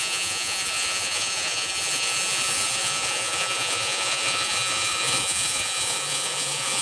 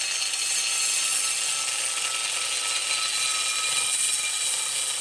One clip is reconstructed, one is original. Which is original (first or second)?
second